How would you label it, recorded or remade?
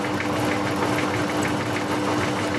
recorded